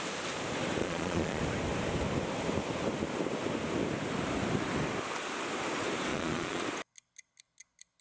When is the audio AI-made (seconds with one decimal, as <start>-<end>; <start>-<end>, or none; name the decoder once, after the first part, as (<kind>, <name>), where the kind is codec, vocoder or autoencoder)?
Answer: 0.8-1.4 (vocoder, Vocos); 6.1-6.6